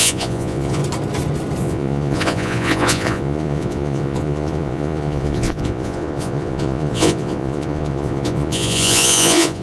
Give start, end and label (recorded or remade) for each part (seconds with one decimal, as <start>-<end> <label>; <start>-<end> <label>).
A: 0.0-0.8 remade; 0.8-1.6 recorded; 1.6-9.6 remade

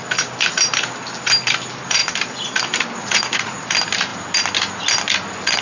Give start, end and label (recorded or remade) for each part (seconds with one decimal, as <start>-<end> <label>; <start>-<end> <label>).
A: 0.0-3.0 recorded; 3.0-3.6 remade; 3.6-5.6 recorded

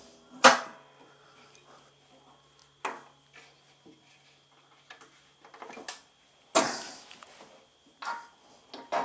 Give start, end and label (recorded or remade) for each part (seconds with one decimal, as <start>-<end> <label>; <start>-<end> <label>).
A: 0.0-9.0 recorded

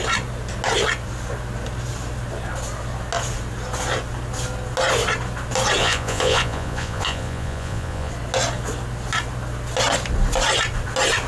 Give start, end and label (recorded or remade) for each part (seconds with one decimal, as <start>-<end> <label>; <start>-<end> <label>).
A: 0.0-5.8 recorded; 5.8-8.1 remade; 8.1-11.3 recorded